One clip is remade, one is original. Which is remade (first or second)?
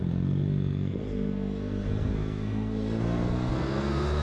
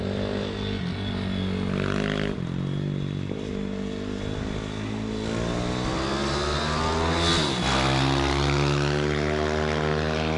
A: first